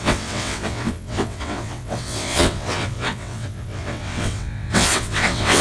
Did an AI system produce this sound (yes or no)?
yes